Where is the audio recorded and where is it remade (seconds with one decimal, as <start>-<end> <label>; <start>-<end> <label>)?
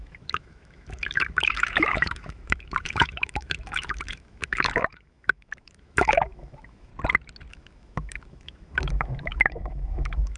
0.0-6.9 remade; 6.9-7.5 recorded; 7.5-10.4 remade